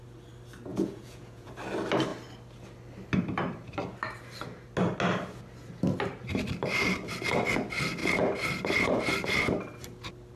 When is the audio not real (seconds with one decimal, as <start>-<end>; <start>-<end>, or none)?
0.7-1.5

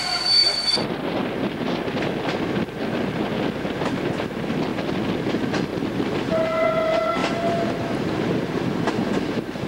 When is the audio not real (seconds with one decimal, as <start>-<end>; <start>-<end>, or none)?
none

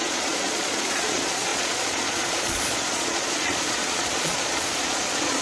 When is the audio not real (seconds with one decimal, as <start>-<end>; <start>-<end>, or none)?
0.0-5.4

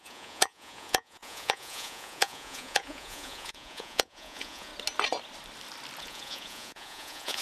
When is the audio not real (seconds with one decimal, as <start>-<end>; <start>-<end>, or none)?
0.0-4.7; 6.0-7.4

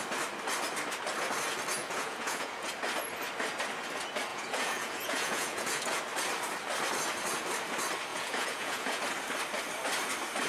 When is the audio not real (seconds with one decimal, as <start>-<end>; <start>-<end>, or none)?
1.8-2.7; 4.3-6.0; 8.1-9.0

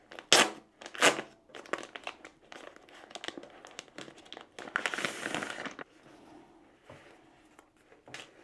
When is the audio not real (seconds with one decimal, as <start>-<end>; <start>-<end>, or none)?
none

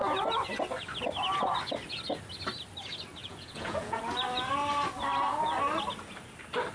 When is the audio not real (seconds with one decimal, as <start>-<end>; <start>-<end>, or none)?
3.2-4.0

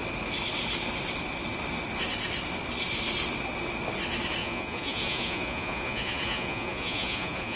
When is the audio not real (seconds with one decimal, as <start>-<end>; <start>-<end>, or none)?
4.4-7.6